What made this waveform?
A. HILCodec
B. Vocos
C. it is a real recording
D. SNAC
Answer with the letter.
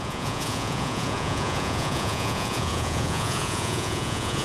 B